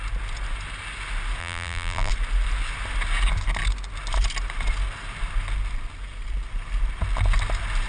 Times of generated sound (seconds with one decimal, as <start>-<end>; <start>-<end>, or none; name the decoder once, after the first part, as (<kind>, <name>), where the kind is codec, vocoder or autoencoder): 1.4-2.1 (vocoder, BigVGAN v2)